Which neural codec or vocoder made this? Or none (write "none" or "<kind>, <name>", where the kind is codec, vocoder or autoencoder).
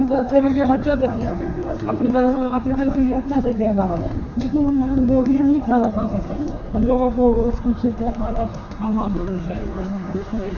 codec, SNAC